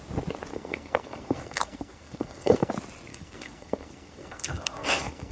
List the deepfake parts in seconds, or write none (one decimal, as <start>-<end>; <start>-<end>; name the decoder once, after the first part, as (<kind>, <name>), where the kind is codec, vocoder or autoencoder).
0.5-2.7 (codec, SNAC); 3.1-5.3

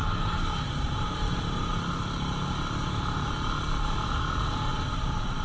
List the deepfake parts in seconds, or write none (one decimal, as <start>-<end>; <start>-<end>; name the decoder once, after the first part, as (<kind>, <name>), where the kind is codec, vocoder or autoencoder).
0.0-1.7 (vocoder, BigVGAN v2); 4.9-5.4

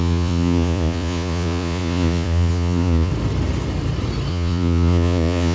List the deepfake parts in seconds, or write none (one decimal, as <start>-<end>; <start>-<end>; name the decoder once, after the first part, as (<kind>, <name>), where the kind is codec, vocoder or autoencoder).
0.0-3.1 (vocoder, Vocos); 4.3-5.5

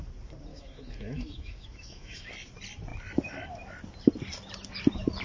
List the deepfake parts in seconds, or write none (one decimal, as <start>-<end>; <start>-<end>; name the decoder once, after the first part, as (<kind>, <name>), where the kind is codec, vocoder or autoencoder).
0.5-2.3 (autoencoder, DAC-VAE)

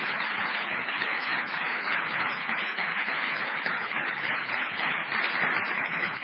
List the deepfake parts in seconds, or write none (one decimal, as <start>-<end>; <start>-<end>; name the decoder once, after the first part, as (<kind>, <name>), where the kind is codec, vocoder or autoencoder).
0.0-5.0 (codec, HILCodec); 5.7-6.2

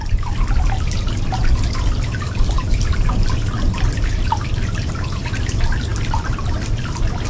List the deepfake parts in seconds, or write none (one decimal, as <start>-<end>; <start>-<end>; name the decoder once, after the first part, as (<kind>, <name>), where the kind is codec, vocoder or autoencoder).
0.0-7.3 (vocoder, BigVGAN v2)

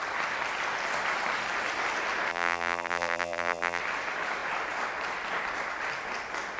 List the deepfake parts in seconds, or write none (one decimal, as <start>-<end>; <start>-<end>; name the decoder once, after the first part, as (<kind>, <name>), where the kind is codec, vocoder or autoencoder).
2.3-3.8 (vocoder, BigVGAN v2)